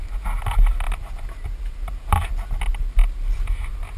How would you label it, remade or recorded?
recorded